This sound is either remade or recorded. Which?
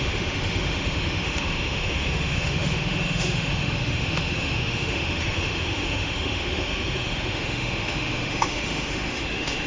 remade